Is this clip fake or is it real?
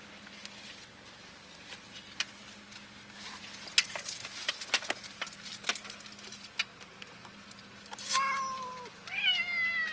real